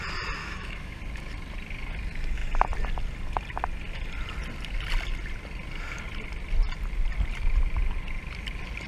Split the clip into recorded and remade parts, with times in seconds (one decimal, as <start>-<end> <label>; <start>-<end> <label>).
0.0-0.4 recorded; 0.4-1.0 remade; 1.0-8.9 recorded

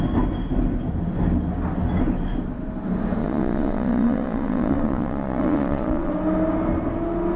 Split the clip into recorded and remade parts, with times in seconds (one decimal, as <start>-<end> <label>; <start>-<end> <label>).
0.0-3.2 recorded; 3.2-6.1 remade; 6.1-7.4 recorded